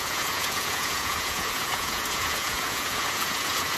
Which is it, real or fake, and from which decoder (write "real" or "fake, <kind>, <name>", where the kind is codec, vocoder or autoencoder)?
fake, vocoder, Vocos